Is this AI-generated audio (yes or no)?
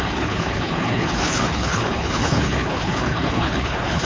yes